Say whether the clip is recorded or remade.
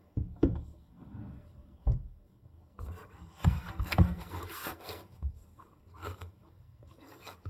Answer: remade